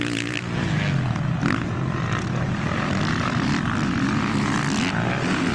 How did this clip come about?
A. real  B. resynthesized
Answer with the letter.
A